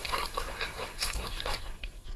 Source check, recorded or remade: remade